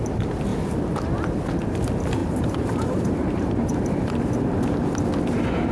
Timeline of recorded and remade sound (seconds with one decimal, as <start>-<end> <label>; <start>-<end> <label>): 0.0-0.5 recorded; 0.5-1.0 remade; 1.0-2.2 recorded; 2.2-5.1 remade; 5.1-5.7 recorded

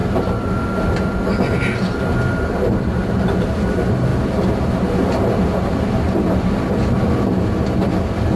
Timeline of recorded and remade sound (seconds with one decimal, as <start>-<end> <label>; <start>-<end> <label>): 0.0-8.4 recorded